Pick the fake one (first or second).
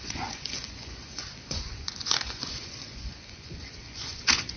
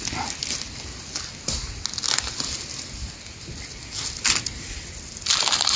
first